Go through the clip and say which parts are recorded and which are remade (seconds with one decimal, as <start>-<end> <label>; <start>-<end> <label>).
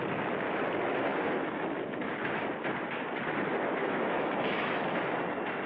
0.0-1.1 recorded; 1.1-2.1 remade; 2.1-3.8 recorded; 3.8-4.8 remade; 4.8-5.7 recorded